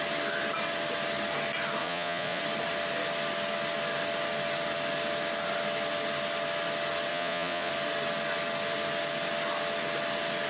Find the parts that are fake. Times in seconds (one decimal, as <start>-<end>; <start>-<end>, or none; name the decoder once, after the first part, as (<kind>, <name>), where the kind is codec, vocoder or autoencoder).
1.8-2.4 (vocoder, Vocos); 7.1-7.7